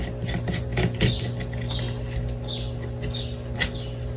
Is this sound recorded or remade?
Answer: recorded